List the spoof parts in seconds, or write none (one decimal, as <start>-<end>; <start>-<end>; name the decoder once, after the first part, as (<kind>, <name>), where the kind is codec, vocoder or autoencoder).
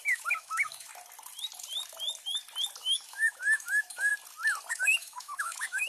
0.0-0.9 (autoencoder, DAC-VAE); 2.8-4.1; 4.7-5.9